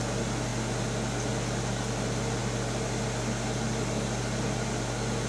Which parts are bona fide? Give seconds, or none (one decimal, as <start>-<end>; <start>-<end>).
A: 0.0-5.3